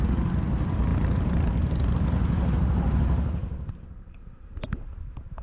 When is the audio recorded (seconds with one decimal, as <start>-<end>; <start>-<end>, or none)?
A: 0.0-0.9; 1.5-3.4; 4.2-5.4